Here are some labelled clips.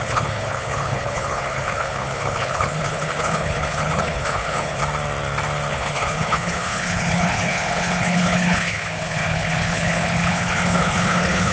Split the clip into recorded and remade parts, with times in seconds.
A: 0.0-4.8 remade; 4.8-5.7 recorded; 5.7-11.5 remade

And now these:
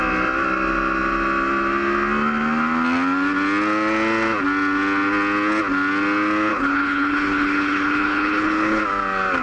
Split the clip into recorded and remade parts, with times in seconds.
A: 0.0-6.5 recorded; 6.5-8.8 remade; 8.8-9.4 recorded

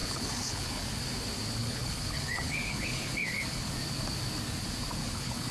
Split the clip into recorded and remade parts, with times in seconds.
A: 0.0-0.8 remade; 0.8-1.6 recorded; 1.6-3.7 remade; 3.7-5.0 recorded; 5.0-5.5 remade

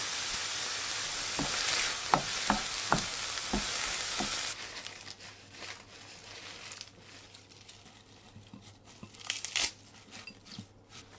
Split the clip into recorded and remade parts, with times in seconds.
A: 0.0-11.2 recorded

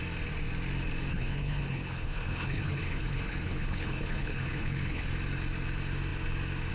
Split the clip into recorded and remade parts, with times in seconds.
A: 0.0-1.1 recorded; 1.1-5.1 remade; 5.1-6.7 recorded

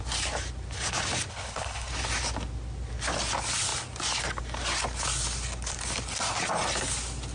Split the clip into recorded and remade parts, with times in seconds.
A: 0.0-1.3 recorded; 1.3-1.9 remade; 1.9-7.3 recorded

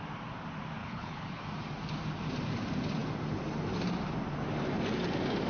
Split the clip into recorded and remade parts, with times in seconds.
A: 0.0-0.8 recorded; 0.8-1.4 remade; 1.4-5.5 recorded